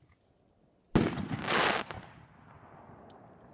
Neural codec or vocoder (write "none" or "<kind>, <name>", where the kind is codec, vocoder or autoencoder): none